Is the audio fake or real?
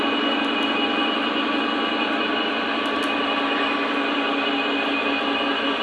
real